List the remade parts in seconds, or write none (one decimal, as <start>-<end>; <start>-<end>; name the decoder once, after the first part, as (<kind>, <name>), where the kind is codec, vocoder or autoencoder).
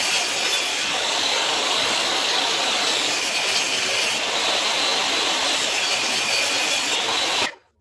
0.7-3.3 (codec, DAC)